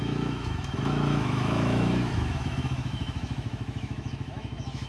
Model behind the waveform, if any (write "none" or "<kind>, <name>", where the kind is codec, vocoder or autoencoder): autoencoder, DAC-VAE